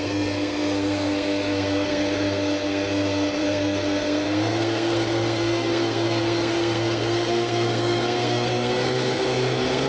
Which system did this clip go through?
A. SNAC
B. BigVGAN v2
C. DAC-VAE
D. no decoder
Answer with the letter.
A